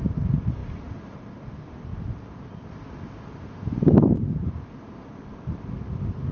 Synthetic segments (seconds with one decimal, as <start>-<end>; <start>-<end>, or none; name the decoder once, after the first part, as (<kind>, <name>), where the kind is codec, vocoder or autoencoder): none